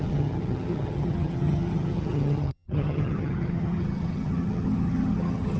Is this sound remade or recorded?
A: remade